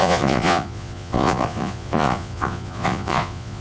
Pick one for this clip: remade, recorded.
remade